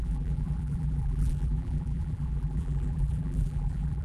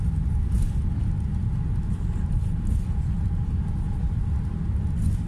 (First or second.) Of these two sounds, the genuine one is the second